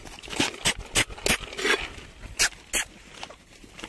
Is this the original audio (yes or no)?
yes